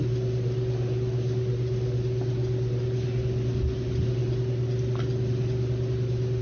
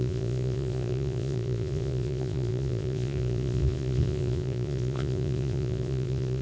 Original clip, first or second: first